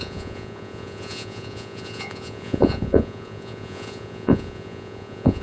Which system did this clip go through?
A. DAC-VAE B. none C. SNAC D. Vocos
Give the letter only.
D